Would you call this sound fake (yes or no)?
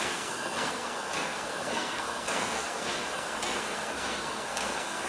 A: yes